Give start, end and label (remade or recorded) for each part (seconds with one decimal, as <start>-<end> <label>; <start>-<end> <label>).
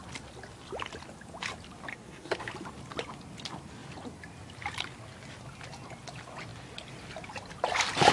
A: 0.0-1.9 recorded; 1.9-2.5 remade; 2.5-8.1 recorded